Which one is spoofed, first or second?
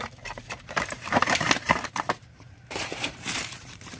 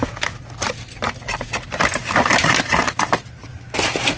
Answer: first